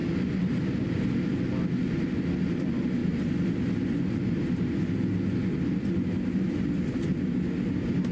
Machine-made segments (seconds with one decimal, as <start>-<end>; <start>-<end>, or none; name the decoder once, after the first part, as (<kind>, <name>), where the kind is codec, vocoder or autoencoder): none